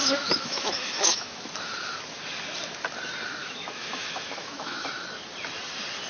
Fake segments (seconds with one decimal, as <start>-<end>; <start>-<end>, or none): 0.0-1.5; 3.4-4.9